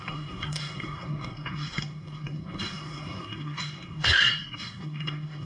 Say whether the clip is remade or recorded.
remade